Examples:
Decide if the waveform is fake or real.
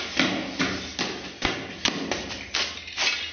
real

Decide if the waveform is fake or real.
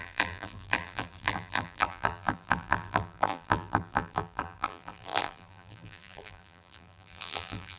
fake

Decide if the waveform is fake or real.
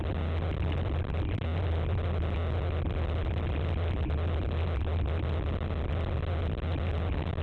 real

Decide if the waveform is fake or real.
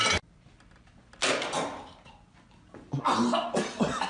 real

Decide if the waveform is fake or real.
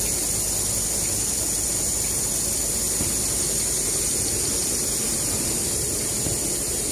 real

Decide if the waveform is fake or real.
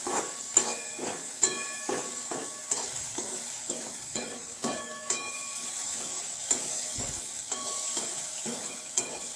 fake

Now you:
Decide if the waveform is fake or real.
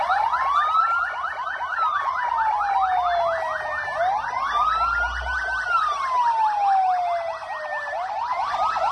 real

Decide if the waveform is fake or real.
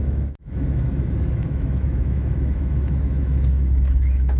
fake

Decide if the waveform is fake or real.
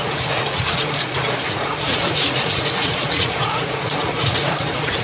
fake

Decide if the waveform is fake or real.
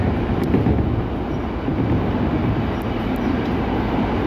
real